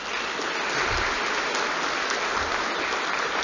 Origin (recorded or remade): recorded